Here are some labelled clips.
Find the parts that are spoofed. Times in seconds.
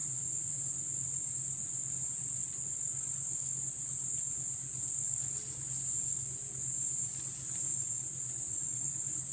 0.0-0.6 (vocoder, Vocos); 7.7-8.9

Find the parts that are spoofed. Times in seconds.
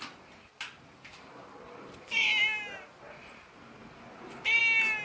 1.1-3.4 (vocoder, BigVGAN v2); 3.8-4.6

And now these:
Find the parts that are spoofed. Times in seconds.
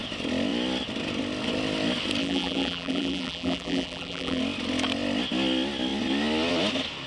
2.2-4.4 (vocoder, BigVGAN v2)